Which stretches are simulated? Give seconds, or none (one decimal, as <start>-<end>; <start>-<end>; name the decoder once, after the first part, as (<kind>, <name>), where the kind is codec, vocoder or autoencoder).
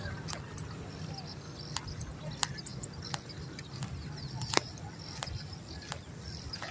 none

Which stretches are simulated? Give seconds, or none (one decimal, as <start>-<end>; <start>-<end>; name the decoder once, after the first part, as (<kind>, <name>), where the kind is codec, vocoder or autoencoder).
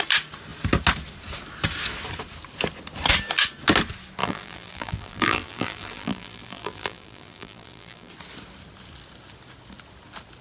4.2-8.1 (vocoder, BigVGAN v2)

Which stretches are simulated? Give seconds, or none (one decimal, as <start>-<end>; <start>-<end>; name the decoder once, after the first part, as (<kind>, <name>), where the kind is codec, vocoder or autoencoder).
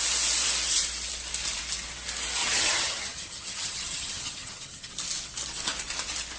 2.4-4.9 (vocoder, HiFi-GAN)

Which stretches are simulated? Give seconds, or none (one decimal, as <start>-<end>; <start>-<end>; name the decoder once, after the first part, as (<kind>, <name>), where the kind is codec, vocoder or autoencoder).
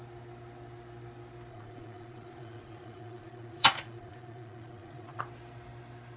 1.5-5.2 (vocoder, Vocos)